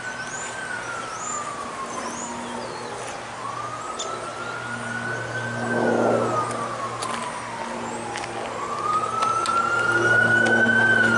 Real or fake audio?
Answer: real